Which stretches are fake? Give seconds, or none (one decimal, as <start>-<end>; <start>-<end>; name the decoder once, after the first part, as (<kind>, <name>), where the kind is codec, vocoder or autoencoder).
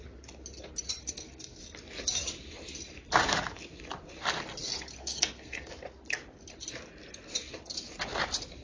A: 1.0-1.6 (codec, SNAC); 5.0-5.7